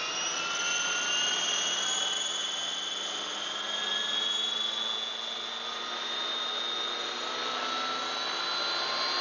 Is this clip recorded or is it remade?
recorded